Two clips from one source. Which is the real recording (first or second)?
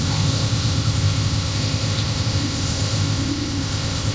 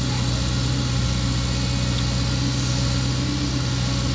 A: second